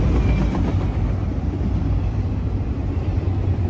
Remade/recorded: recorded